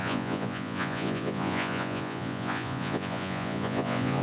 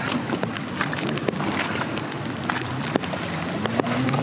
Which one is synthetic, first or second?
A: first